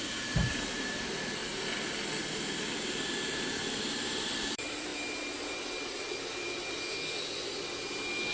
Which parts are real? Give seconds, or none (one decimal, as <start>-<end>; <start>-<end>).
1.4-2.3; 4.9-8.3